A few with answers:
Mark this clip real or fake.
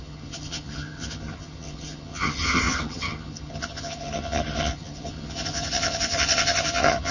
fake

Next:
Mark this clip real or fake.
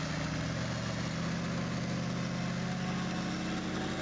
real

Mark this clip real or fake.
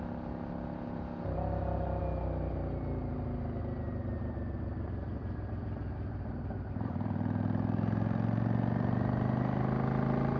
real